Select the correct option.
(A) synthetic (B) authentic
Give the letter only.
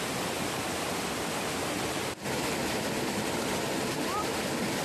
B